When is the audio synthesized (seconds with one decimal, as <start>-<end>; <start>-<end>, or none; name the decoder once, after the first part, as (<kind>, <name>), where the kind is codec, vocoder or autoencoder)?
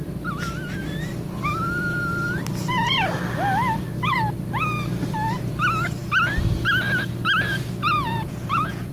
7.8-8.9 (vocoder, Vocos)